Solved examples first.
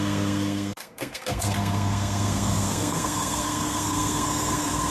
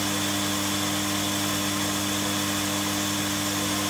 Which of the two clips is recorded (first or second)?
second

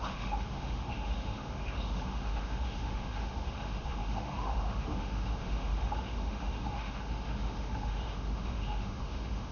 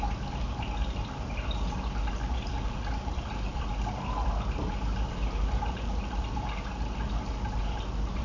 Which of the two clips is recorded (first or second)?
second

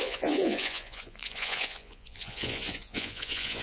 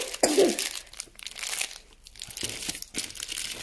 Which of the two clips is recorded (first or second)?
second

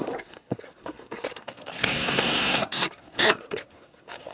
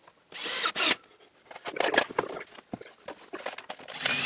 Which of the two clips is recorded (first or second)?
second